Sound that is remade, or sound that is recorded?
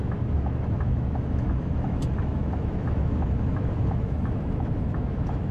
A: remade